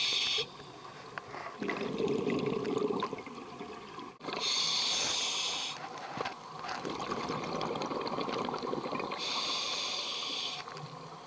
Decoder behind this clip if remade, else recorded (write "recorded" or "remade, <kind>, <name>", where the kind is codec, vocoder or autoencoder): recorded